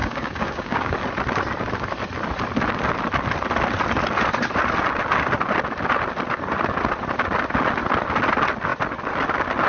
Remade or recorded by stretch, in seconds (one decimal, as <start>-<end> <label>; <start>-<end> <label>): 0.0-0.9 remade; 0.9-9.7 recorded